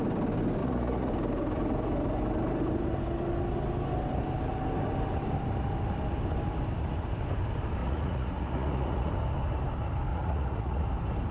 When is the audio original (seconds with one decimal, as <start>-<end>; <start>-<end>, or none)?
0.0-0.6; 1.1-7.8; 9.1-10.1; 10.8-11.3